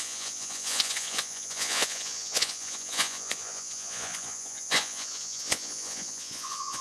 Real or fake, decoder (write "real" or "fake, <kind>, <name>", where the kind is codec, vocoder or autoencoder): fake, vocoder, Vocos